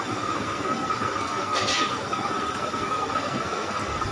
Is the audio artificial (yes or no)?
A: yes